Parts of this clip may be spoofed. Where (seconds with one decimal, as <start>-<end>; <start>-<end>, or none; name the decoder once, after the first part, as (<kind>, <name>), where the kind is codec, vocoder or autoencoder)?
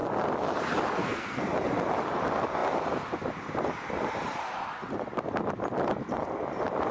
1.0-1.5 (codec, SNAC)